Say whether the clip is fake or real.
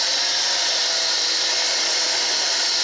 real